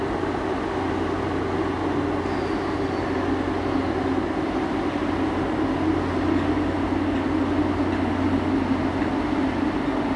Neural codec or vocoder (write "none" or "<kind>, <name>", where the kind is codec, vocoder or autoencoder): none